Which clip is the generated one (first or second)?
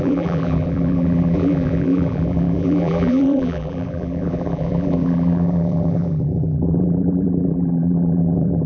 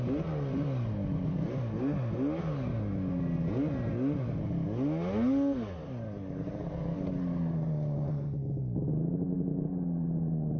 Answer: first